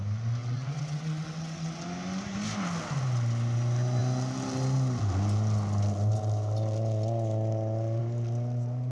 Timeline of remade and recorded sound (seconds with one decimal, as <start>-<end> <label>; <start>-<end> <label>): 0.0-0.4 recorded; 0.4-1.8 remade; 1.8-8.9 recorded